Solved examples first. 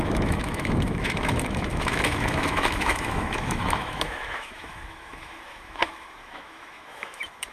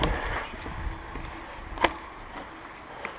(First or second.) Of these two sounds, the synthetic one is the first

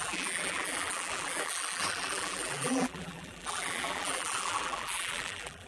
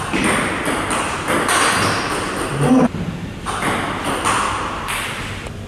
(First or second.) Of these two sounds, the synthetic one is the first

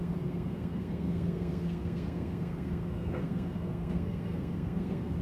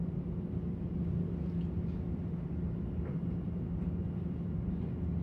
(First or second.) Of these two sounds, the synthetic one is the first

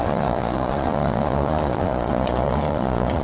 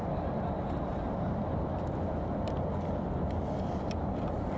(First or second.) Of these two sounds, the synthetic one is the first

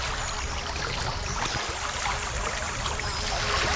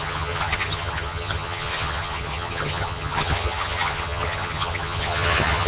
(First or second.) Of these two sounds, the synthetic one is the second